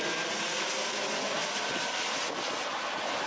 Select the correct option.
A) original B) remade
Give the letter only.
A